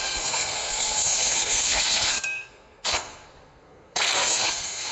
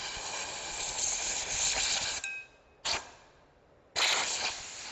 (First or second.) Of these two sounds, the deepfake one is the first